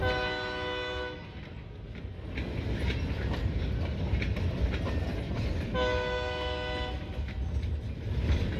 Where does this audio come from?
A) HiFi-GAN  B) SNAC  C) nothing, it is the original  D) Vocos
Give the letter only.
C